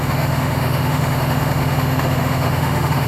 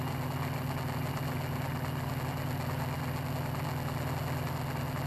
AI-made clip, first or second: first